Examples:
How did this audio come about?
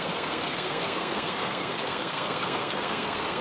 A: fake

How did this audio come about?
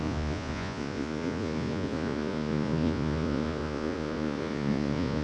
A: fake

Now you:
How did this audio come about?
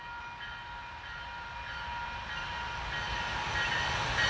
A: real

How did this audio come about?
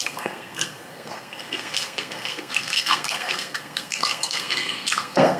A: fake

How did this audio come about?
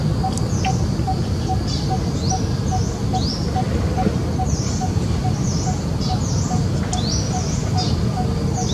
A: real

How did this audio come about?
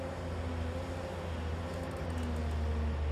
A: real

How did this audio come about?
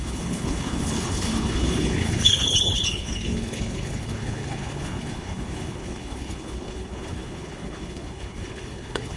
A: fake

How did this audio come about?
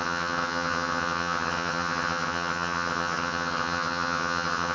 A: fake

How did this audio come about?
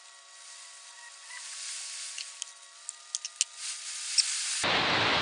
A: real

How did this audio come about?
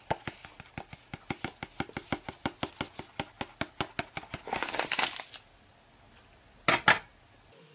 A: real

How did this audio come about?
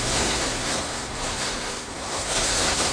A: fake